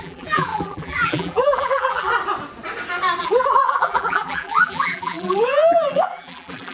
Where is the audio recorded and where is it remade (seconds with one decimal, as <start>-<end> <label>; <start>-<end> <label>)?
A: 0.0-2.1 remade; 2.1-3.2 recorded; 3.2-6.7 remade